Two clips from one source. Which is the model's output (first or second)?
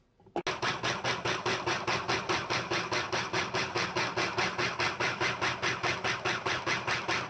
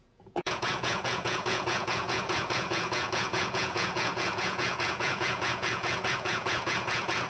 second